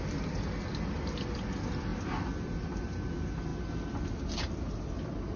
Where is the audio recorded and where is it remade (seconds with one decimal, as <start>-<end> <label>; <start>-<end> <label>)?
0.0-5.4 recorded